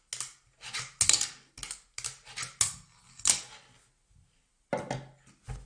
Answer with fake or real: real